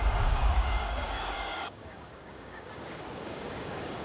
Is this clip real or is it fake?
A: fake